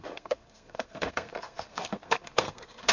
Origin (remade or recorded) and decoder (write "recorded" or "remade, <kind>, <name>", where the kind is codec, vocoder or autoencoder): remade, codec, SNAC